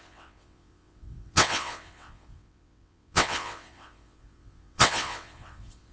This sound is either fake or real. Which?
fake